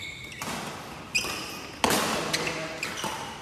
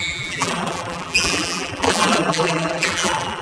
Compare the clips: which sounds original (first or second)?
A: first